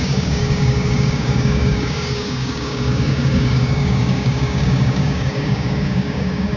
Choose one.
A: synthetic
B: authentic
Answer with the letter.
A